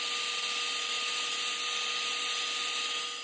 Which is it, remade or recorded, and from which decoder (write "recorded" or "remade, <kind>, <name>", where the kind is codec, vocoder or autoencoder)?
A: recorded